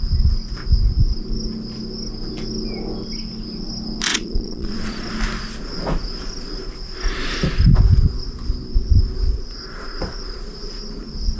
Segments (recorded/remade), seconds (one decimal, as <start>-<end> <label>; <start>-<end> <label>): 0.0-4.1 recorded; 4.1-5.1 remade; 5.1-11.4 recorded